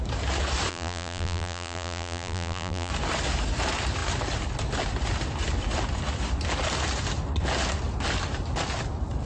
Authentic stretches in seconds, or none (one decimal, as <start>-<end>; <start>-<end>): 0.0-0.7; 2.9-9.3